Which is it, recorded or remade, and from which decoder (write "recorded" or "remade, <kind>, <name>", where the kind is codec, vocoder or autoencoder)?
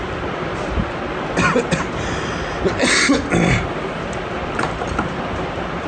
recorded